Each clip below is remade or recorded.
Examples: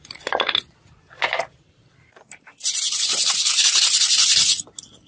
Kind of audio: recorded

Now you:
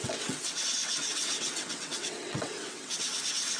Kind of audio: remade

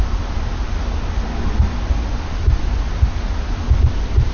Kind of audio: recorded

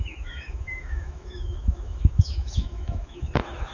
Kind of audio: remade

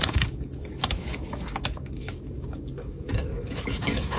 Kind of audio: remade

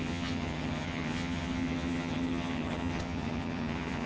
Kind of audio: remade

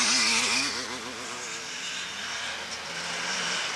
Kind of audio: recorded